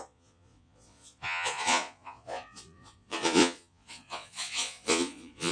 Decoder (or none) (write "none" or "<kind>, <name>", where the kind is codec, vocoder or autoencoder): vocoder, Vocos